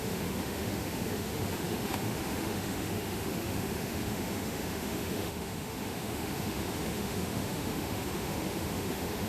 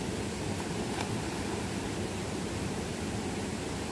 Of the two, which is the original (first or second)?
second